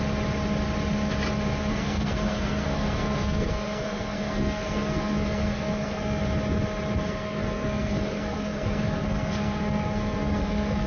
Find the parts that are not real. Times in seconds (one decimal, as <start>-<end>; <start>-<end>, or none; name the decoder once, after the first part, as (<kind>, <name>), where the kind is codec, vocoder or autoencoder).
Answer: 1.7-6.2 (codec, SNAC); 7.0-10.9

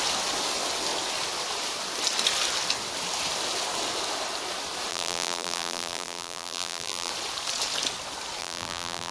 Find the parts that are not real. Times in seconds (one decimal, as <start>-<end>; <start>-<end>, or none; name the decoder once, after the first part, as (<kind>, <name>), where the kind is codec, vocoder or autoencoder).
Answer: 4.9-7.1 (vocoder, BigVGAN v2); 8.4-9.1

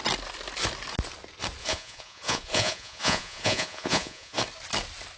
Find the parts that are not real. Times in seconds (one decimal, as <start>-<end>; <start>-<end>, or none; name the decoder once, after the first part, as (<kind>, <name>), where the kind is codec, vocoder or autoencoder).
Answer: 1.6-4.4 (vocoder, Vocos)